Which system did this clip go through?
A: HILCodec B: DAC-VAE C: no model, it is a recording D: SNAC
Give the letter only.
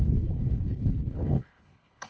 A